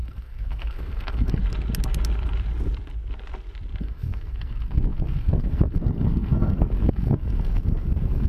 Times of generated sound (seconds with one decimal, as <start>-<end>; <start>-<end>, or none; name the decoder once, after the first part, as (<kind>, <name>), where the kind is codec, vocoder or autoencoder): 0.0-1.4 (codec, SNAC); 3.8-8.3